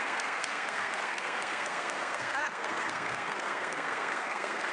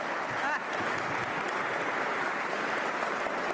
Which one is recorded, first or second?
second